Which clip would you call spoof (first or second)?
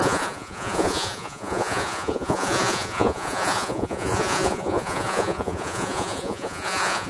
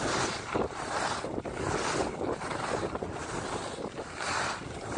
first